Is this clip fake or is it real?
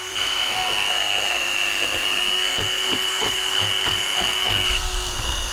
fake